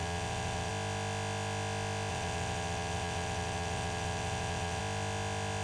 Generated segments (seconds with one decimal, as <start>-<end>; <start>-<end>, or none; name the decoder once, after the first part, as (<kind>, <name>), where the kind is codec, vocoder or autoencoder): 0.0-0.7 (vocoder, WaveNeXt); 2.1-4.8

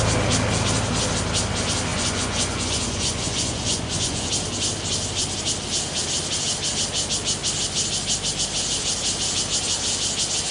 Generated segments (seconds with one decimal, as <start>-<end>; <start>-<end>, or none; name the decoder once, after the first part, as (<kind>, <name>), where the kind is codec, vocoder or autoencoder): 1.9-4.3 (vocoder, Vocos)